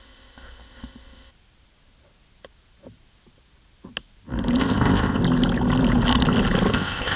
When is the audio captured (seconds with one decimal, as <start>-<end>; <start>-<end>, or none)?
1.3-4.6; 5.2-6.7